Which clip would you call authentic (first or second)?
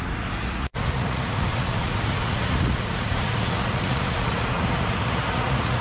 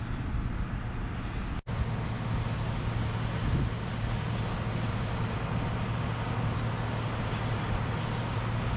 second